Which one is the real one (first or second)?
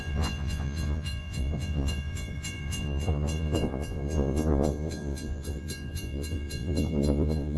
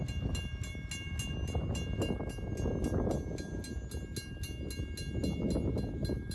second